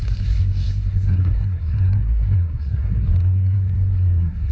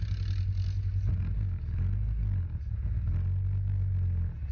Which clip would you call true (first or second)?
second